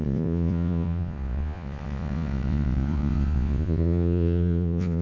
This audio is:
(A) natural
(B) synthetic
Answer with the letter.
B